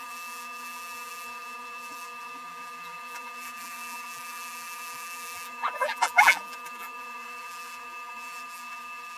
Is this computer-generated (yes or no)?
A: yes